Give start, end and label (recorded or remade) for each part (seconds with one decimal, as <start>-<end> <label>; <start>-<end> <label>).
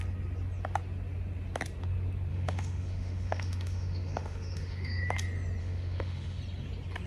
0.0-2.3 recorded; 2.3-5.1 remade; 5.1-5.6 recorded; 5.6-6.4 remade; 6.4-7.1 recorded